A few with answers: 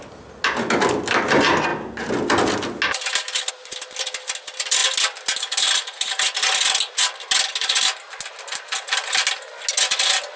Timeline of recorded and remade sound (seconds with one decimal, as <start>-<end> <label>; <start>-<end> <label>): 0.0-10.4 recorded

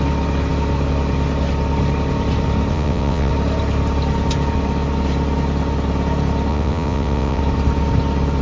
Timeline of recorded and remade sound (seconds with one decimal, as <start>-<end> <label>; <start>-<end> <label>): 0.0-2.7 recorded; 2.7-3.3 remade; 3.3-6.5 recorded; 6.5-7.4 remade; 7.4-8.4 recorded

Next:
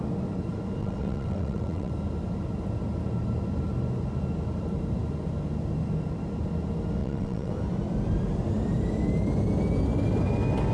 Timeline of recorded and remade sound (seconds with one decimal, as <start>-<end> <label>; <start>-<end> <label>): 0.0-0.8 recorded; 0.8-1.9 remade; 1.9-7.0 recorded; 7.0-7.5 remade; 7.5-10.7 recorded